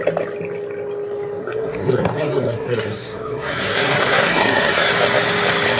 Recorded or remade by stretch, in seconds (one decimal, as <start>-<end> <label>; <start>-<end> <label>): 0.0-1.4 recorded; 1.4-4.9 remade; 4.9-5.8 recorded